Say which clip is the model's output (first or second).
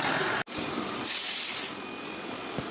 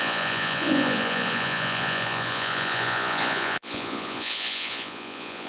second